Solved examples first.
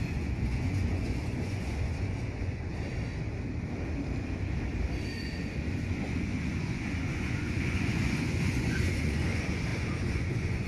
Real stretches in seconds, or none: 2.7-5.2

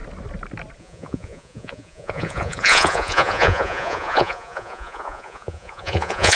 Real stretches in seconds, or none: 0.0-0.8

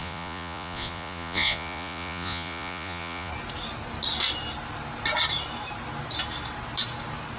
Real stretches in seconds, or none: 3.3-7.4

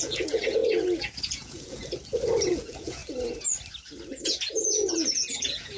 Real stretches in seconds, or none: 0.6-1.2; 1.8-2.5; 3.0-4.1

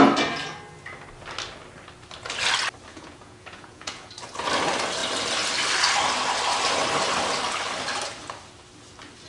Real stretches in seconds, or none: 0.0-2.9; 4.1-9.3

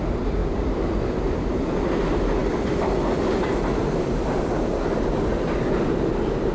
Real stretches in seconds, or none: 0.0-6.5

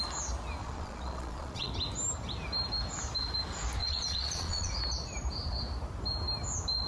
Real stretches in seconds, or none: 0.0-0.6; 1.7-3.8; 4.7-6.9

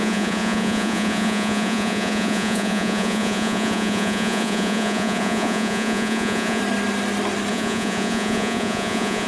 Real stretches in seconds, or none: 6.6-7.5